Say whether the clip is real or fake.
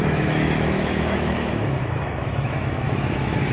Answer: fake